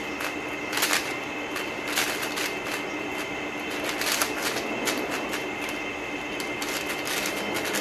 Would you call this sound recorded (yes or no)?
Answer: yes